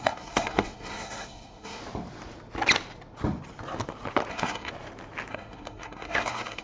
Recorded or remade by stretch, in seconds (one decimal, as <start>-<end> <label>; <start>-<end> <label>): 0.0-1.8 remade; 1.8-4.3 recorded; 4.3-4.7 remade; 4.7-5.3 recorded; 5.3-6.6 remade